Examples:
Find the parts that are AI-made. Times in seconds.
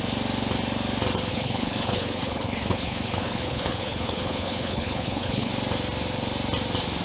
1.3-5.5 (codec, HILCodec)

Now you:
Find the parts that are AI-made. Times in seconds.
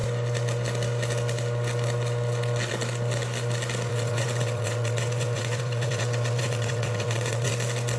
3.9-7.5 (vocoder, WaveNeXt)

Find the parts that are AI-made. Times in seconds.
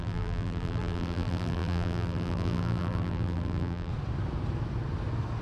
0.0-3.9 (vocoder, BigVGAN v2)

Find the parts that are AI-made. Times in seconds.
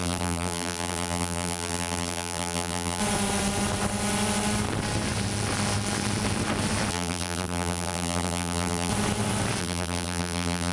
0.0-3.0 (vocoder, BigVGAN v2); 6.9-8.9; 9.6-10.7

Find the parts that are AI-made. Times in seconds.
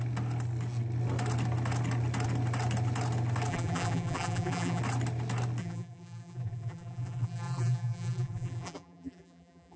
3.5-4.8 (vocoder, BigVGAN v2); 5.6-9.8